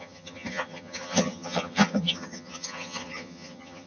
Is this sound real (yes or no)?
no